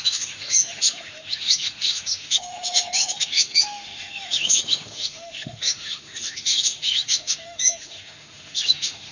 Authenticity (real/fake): fake